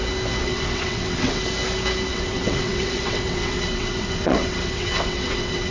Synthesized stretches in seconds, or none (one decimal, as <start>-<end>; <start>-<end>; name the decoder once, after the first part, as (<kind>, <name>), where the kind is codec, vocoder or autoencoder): 0.4-1.4 (vocoder, WaveNeXt); 2.1-5.7